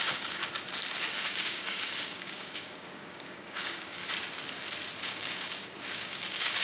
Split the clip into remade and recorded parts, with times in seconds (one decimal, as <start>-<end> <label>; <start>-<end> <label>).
0.0-0.4 remade; 0.4-1.1 recorded; 1.1-4.0 remade; 4.0-5.0 recorded; 5.0-6.6 remade